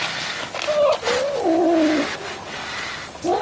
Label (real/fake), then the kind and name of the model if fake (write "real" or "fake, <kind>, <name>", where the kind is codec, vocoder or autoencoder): real